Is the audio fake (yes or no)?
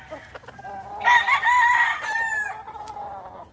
no